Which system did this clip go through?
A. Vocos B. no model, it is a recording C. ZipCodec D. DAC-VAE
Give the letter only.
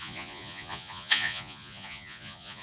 A